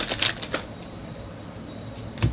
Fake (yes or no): no